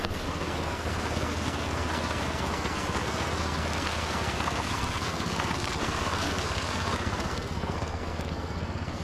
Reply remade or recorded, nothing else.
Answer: remade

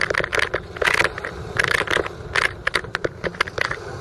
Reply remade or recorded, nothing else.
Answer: recorded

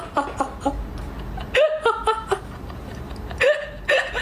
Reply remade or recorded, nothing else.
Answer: recorded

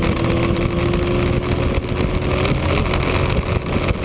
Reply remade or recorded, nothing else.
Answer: recorded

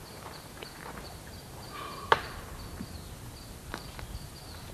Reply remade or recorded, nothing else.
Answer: remade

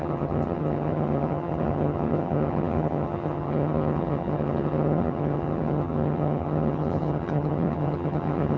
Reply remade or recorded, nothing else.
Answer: remade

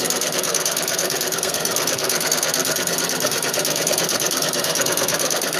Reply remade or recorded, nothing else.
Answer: remade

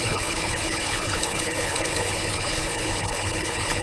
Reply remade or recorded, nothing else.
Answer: remade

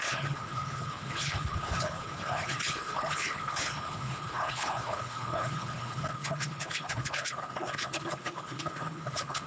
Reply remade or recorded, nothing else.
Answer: remade